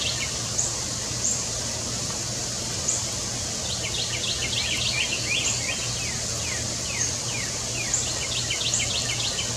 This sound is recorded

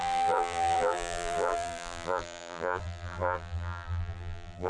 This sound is remade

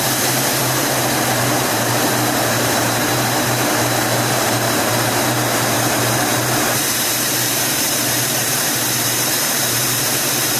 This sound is remade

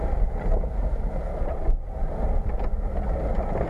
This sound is recorded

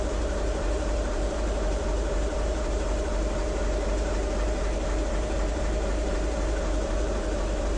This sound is remade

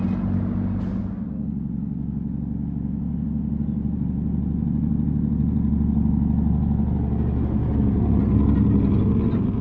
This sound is recorded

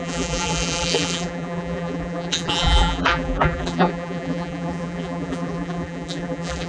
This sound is remade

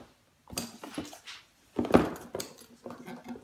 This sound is recorded